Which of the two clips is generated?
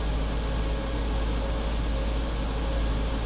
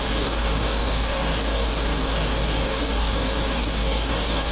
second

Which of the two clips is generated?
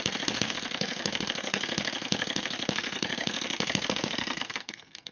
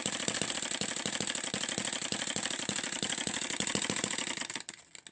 first